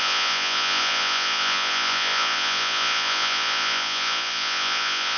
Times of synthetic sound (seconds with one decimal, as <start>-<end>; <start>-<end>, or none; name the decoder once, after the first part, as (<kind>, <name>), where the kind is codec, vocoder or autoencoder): 0.0-5.2 (vocoder, Vocos)